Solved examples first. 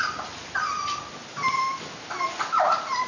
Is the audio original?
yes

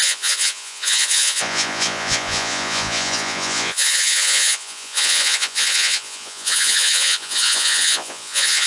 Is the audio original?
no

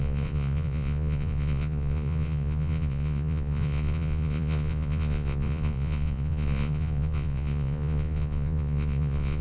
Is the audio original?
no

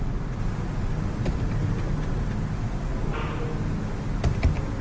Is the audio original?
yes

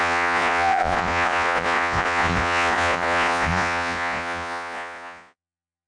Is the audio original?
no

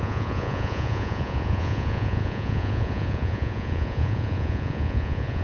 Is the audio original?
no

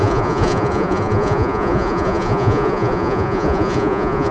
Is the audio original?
no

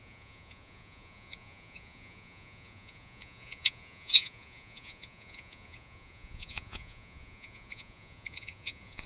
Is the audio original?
no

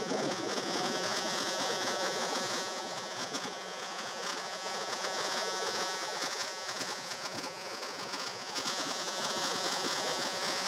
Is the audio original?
no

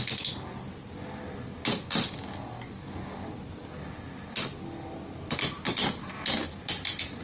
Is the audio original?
yes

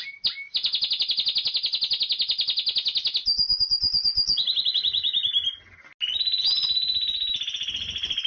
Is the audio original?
yes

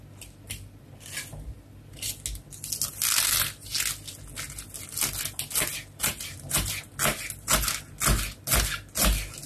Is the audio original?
yes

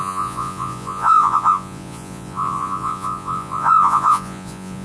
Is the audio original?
no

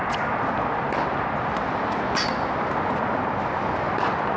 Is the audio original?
yes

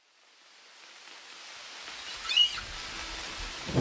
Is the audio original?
yes